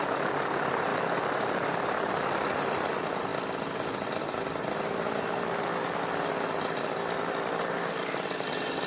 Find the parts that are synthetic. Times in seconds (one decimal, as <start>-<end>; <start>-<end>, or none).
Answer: 0.9-2.1